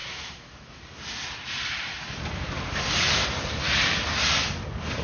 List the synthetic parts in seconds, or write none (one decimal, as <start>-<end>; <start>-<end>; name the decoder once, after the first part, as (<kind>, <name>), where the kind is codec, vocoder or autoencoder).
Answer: 0.0-0.8 (autoencoder, DAC-VAE)